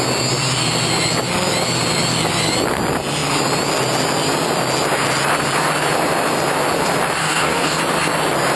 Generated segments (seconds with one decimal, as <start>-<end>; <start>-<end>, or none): 7.2-7.8